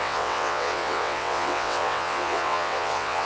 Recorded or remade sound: remade